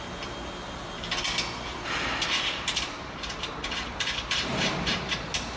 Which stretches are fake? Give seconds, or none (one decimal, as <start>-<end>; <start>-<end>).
1.7-5.1